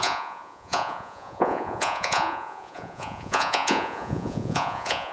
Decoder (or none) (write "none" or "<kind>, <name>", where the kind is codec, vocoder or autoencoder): vocoder, Vocos